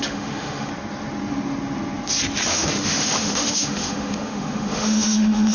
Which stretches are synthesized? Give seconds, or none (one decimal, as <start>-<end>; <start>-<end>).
0.0-0.7; 2.5-5.5

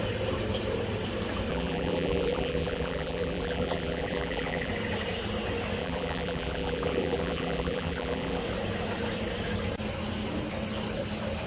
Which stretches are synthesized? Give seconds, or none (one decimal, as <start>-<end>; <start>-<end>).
1.5-4.7; 5.8-8.4